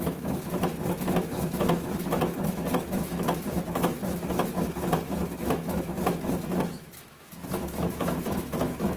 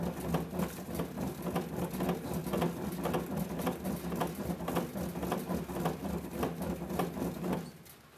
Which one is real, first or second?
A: second